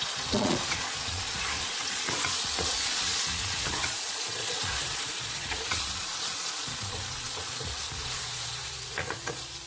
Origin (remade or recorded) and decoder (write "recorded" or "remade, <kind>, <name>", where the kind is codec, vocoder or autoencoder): remade, vocoder, Vocos